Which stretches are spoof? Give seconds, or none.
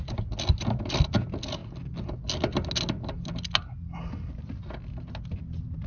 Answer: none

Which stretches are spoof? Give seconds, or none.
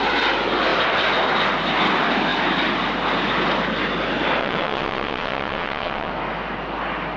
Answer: 4.4-6.1 (vocoder, WaveNeXt)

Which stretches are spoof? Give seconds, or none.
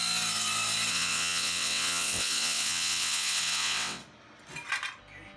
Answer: 0.9-4.0 (vocoder, WaveNeXt)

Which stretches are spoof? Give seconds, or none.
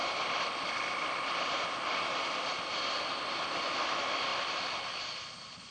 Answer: none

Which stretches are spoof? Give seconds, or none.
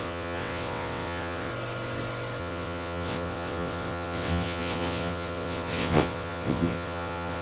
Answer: 0.0-1.5 (vocoder, WaveNeXt); 2.4-7.4